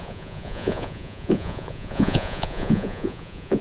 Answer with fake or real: fake